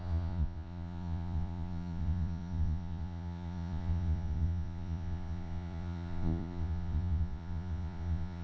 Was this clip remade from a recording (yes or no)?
yes